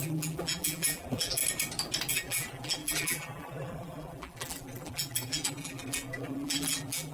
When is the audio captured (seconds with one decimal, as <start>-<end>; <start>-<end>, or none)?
1.4-2.1